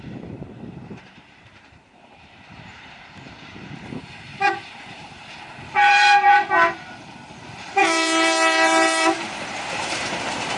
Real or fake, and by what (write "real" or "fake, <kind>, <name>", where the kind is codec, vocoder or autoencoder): fake, vocoder, BigVGAN v2